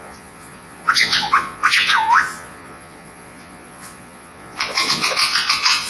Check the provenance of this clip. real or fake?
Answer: fake